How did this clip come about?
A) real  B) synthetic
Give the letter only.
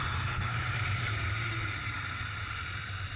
B